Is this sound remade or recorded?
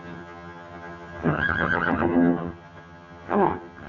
remade